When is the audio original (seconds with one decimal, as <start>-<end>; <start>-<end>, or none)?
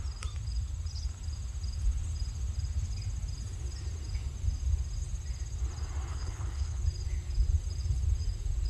0.0-6.1; 6.8-8.7